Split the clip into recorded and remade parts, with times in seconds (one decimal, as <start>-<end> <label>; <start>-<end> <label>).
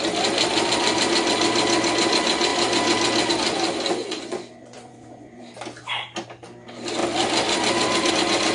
0.0-4.0 recorded; 4.0-5.4 remade; 5.4-8.5 recorded